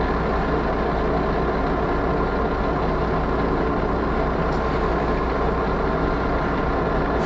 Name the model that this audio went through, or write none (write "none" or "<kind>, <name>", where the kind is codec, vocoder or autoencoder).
none